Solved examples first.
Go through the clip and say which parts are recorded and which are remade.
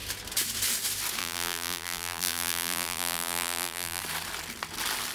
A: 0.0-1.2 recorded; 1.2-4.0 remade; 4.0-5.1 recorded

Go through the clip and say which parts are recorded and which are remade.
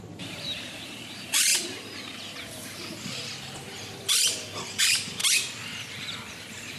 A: 0.0-1.5 remade; 1.5-4.8 recorded; 4.8-5.2 remade; 5.2-6.3 recorded; 6.3-6.8 remade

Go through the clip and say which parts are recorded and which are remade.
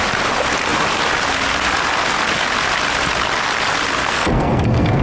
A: 0.0-4.0 recorded; 4.0-5.0 remade